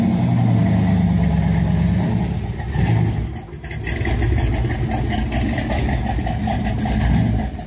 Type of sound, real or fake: real